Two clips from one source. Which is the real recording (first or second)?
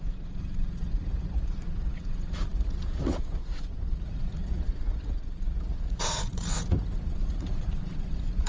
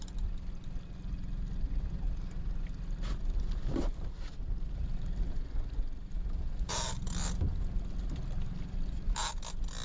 second